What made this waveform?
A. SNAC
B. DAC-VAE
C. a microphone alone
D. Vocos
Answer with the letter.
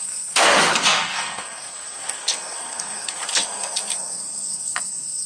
A